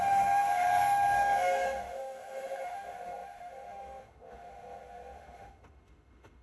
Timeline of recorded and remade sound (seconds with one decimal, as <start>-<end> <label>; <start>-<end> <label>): 0.0-6.4 remade